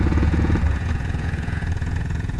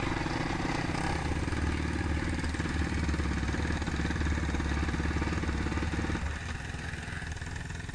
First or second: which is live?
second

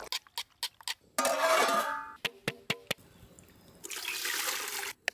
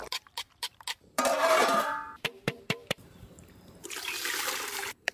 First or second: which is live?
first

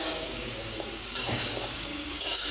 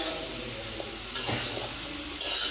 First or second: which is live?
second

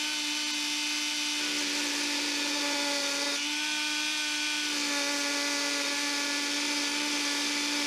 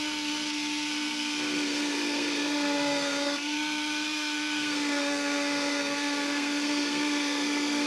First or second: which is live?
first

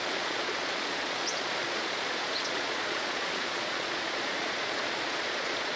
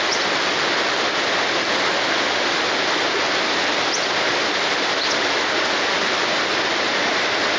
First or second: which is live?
second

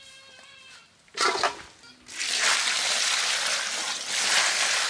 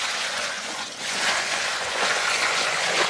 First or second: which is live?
first